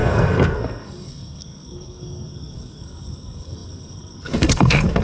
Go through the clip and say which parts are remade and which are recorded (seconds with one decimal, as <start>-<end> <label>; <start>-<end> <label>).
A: 0.0-5.0 remade